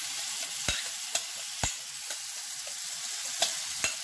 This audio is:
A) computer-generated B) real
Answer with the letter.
B